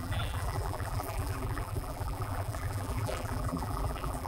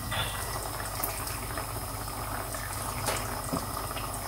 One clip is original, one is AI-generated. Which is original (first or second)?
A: second